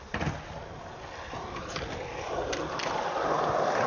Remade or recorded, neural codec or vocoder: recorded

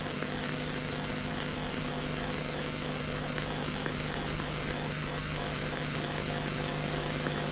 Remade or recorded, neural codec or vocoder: remade, autoencoder, DAC-VAE